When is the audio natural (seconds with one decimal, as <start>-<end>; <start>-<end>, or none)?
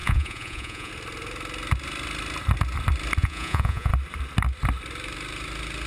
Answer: 0.9-3.2; 3.9-5.9